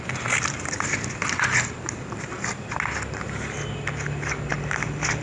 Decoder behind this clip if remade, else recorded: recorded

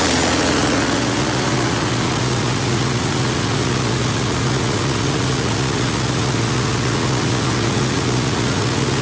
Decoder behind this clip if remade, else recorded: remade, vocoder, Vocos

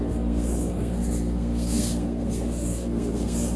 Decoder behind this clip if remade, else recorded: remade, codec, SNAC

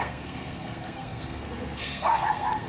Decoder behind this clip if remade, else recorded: remade, codec, SNAC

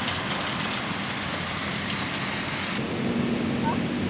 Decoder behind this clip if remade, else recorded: recorded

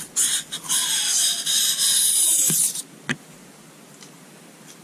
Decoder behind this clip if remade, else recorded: recorded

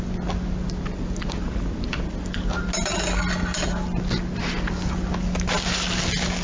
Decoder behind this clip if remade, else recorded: recorded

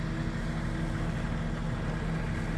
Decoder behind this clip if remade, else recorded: recorded